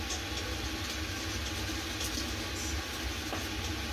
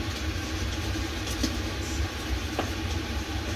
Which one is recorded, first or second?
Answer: first